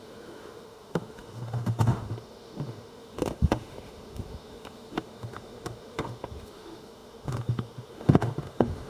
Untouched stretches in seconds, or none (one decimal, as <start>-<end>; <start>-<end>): none